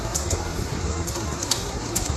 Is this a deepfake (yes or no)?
yes